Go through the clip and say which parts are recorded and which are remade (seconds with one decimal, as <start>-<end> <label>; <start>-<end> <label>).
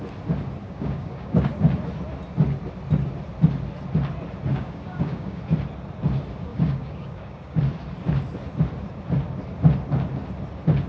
0.0-0.6 recorded; 0.6-1.5 remade; 1.5-4.5 recorded; 4.5-5.4 remade; 5.4-6.5 recorded; 6.5-7.6 remade; 7.6-10.9 recorded